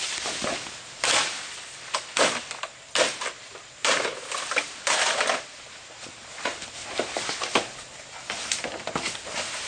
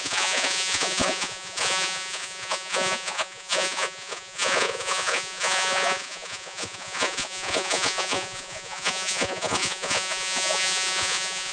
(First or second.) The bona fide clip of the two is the first